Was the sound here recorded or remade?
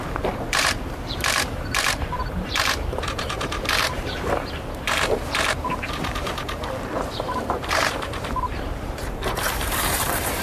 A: remade